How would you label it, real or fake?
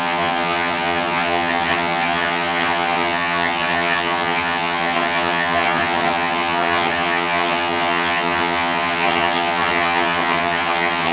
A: fake